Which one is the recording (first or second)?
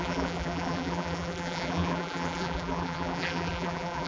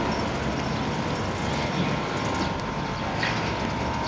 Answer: second